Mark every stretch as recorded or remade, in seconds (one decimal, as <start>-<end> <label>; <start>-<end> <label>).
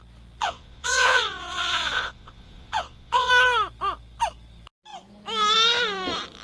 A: 0.0-0.4 recorded; 0.4-3.3 remade; 3.3-6.4 recorded